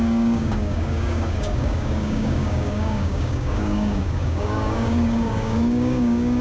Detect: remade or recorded remade